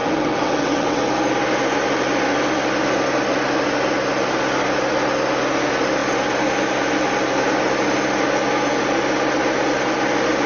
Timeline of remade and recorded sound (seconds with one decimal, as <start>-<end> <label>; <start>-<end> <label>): 0.0-1.0 remade; 1.0-10.5 recorded